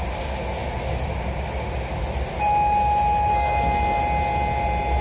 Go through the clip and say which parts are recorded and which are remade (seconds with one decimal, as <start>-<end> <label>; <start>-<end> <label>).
0.0-3.3 recorded; 3.3-4.0 remade; 4.0-5.0 recorded